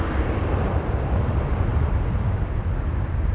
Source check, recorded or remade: recorded